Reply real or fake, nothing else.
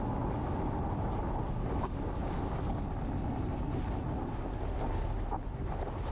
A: real